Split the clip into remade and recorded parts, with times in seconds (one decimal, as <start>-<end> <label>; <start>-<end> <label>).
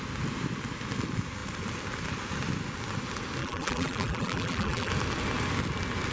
0.0-3.4 recorded; 3.4-4.9 remade; 4.9-6.1 recorded